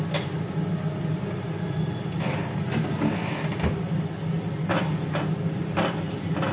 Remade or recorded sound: recorded